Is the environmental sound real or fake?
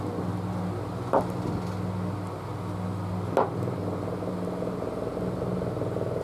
real